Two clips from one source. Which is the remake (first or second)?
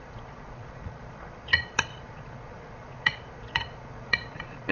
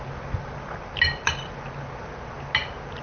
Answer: first